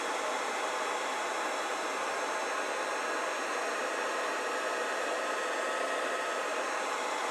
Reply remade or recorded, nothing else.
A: recorded